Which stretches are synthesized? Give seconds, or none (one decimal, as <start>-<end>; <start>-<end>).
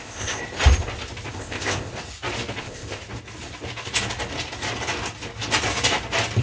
0.0-0.4; 1.3-1.9; 2.6-3.0